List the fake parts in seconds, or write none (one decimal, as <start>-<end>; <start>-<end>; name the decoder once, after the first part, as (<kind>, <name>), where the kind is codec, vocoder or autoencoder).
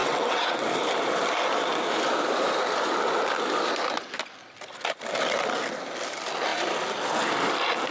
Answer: 0.0-0.7 (vocoder, WaveNeXt)